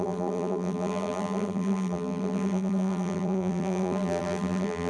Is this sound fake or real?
fake